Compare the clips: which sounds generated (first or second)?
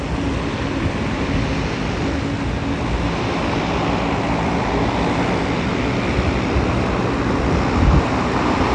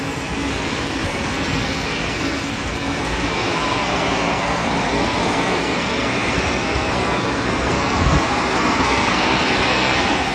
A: second